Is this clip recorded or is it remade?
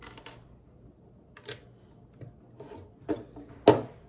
recorded